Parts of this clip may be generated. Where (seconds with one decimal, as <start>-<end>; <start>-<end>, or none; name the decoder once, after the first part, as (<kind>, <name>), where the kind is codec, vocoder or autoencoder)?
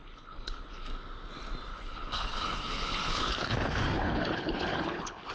0.0-0.9 (codec, HILCodec); 1.7-5.3